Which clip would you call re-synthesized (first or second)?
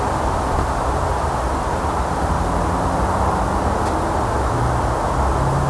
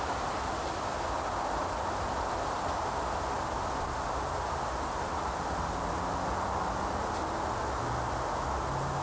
first